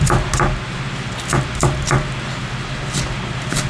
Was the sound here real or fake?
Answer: real